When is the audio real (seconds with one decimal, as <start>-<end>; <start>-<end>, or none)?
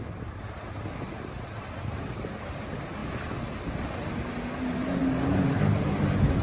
0.0-6.4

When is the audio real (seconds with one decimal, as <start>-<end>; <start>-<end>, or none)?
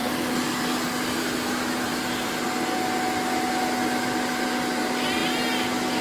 0.0-6.0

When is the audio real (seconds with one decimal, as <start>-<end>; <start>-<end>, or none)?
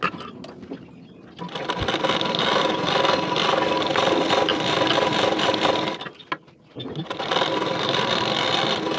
0.0-3.9; 5.6-9.0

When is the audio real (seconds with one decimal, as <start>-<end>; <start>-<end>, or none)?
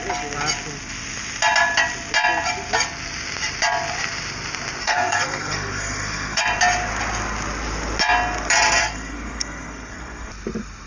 0.0-4.8; 6.4-8.8; 10.3-10.9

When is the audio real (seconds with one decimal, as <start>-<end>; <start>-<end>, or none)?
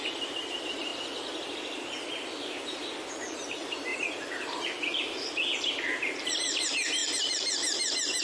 0.9-3.1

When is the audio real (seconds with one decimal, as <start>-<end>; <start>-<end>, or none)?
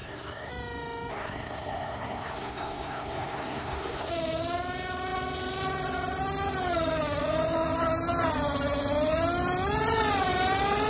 0.5-1.1; 4.1-10.9